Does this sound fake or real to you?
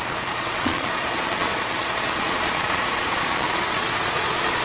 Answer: fake